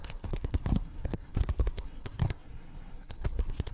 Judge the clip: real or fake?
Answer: fake